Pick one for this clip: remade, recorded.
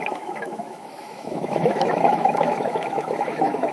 remade